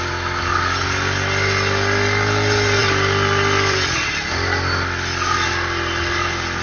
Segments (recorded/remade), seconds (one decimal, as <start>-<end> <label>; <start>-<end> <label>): 0.0-2.8 recorded; 2.8-4.3 remade; 4.3-6.6 recorded